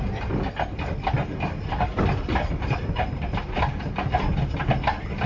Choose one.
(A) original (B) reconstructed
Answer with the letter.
A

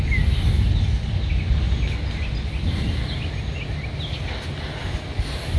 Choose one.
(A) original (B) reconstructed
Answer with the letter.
A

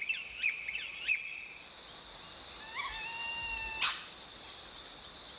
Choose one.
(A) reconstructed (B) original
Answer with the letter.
B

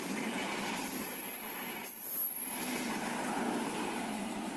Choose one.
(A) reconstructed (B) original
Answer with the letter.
B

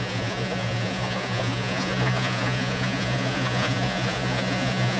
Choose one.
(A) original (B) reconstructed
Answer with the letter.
B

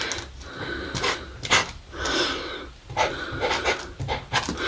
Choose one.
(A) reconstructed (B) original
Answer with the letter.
B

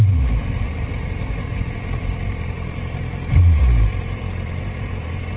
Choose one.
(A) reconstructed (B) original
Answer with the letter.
A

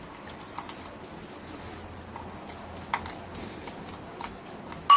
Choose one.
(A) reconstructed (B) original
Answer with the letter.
B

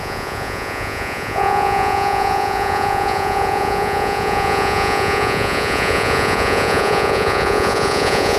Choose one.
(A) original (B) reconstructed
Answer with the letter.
B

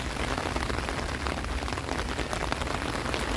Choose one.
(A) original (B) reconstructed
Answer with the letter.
A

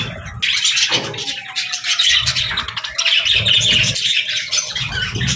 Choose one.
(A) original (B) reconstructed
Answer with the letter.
A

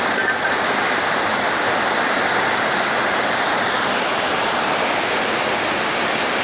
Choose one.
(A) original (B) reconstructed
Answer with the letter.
A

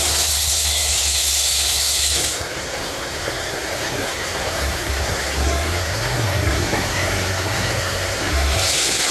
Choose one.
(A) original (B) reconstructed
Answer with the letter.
B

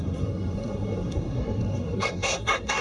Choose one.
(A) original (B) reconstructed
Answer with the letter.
B